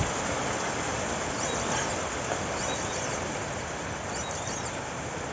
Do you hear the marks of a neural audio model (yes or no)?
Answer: no